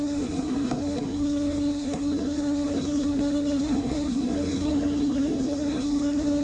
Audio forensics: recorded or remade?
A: remade